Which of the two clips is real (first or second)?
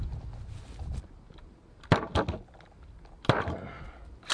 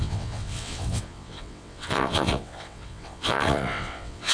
first